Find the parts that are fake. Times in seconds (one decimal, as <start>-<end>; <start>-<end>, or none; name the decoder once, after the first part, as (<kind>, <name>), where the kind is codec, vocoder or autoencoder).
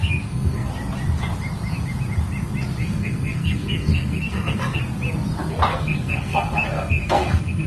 0.0-0.7 (codec, SNAC); 2.8-4.8; 5.7-7.7